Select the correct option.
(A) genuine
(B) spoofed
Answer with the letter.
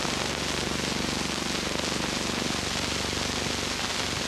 A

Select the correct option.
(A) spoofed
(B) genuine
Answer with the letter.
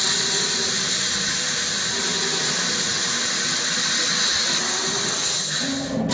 B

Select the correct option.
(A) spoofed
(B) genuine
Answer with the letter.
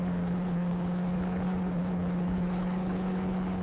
A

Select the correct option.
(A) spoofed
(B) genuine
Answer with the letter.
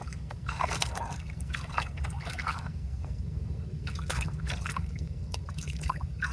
A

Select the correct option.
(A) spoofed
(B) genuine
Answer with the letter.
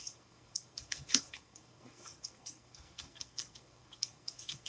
A